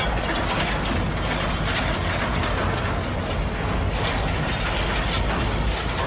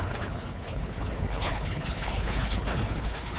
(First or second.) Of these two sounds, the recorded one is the first